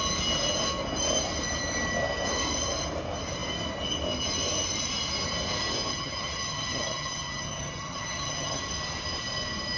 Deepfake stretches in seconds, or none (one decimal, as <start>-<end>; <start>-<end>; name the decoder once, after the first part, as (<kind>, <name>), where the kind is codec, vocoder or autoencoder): 5.9-8.6 (vocoder, HiFi-GAN)